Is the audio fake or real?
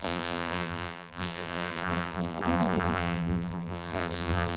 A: fake